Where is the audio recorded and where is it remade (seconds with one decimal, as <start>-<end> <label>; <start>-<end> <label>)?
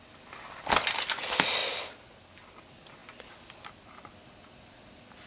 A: 0.0-1.6 recorded; 1.6-2.6 remade; 2.6-3.0 recorded; 3.0-4.0 remade; 4.0-5.3 recorded